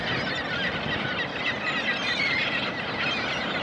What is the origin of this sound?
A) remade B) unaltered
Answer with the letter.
B